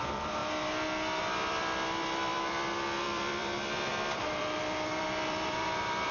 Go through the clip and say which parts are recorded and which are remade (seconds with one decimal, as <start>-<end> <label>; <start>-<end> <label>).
0.0-0.4 remade; 0.4-1.2 recorded; 1.2-6.1 remade